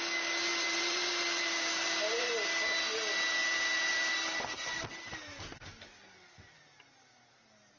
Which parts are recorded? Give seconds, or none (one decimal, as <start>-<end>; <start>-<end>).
0.0-0.5; 2.3-3.4; 4.7-7.8